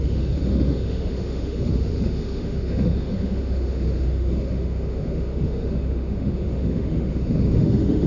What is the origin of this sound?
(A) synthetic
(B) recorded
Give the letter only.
A